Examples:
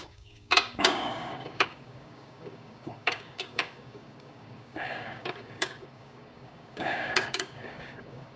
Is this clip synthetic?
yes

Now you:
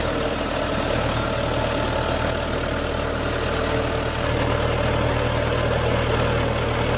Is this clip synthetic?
no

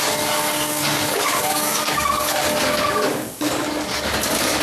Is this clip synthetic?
yes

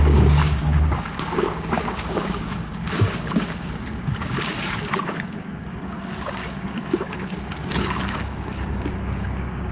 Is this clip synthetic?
yes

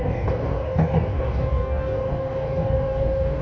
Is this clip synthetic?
yes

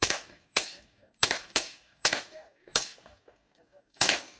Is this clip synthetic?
yes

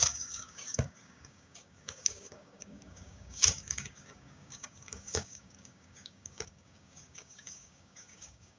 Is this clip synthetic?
yes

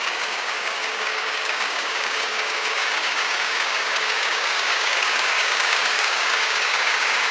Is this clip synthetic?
yes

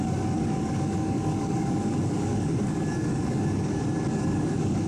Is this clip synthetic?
yes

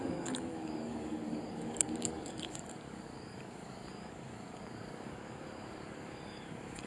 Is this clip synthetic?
yes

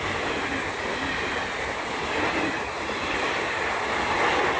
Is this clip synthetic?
no